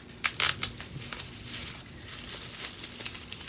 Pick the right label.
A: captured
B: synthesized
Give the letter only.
A